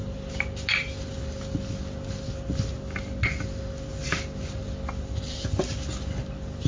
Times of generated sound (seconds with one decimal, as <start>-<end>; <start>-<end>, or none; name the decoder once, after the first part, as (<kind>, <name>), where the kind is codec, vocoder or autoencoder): none